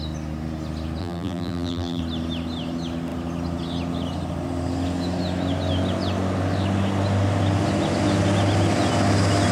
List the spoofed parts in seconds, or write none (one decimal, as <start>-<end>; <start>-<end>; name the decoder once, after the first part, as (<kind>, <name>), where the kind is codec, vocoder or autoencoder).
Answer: 1.0-2.0 (vocoder, BigVGAN v2)